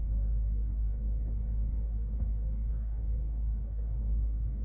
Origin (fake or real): fake